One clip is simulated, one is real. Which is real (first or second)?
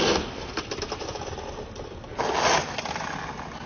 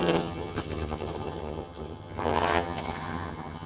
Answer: first